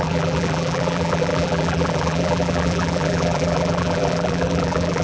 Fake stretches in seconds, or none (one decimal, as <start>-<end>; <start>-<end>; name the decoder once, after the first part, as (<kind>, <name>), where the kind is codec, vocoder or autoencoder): 0.0-5.0 (vocoder, BigVGAN v2)